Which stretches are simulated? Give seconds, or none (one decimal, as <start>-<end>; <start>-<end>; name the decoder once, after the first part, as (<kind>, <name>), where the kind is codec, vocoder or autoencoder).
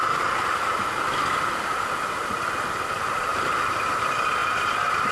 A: 3.3-4.0 (vocoder, BigVGAN v2); 4.4-5.1